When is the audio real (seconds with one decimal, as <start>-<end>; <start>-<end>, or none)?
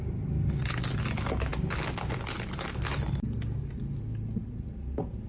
0.0-5.3